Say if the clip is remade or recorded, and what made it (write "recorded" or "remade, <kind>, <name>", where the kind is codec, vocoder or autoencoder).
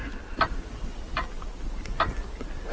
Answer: recorded